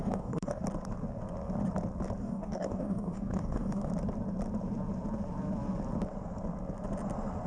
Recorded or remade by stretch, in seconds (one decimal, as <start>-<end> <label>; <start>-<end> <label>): 0.0-0.6 remade; 0.6-2.2 recorded; 2.2-3.9 remade; 3.9-7.5 recorded